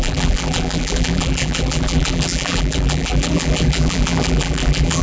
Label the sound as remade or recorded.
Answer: remade